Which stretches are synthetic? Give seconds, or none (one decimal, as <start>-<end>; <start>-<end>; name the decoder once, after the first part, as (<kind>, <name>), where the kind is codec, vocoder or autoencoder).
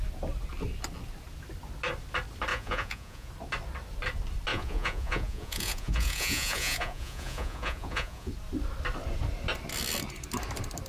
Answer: 2.5-3.3 (vocoder, Vocos); 4.5-8.3